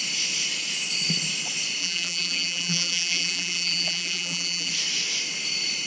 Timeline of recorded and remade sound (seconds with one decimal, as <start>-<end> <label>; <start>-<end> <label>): 0.0-1.8 recorded; 1.8-4.7 remade; 4.7-5.9 recorded

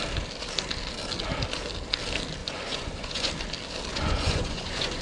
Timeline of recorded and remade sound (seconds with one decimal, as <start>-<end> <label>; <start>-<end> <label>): 0.0-2.4 recorded; 2.4-3.3 remade; 3.3-3.9 recorded; 3.9-5.0 remade

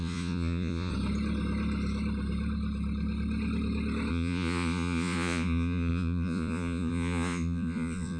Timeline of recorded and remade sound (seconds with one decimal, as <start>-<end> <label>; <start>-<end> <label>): 0.0-0.9 remade; 0.9-4.1 recorded; 4.1-8.2 remade

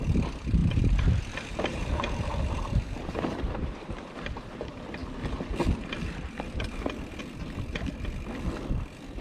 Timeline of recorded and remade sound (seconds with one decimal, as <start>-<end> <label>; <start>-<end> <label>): 0.0-0.6 recorded; 0.6-3.9 remade; 3.9-9.2 recorded

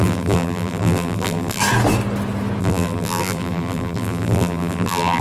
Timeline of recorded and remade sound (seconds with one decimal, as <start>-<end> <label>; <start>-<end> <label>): 0.0-1.6 remade; 1.6-2.6 recorded; 2.6-5.2 remade

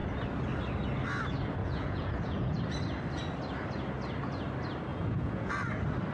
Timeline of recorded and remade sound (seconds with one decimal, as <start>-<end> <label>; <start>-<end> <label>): 0.0-1.6 recorded; 1.6-2.6 remade; 2.6-4.9 recorded; 4.9-5.5 remade; 5.5-6.1 recorded